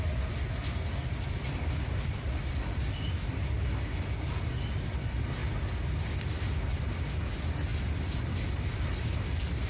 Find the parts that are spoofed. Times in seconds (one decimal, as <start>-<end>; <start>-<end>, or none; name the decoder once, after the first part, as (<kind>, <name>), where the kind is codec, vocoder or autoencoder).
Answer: 1.0-3.3 (vocoder, BigVGAN v2)